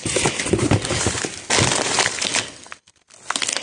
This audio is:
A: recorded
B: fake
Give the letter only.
A